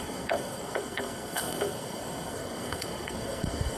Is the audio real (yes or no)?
no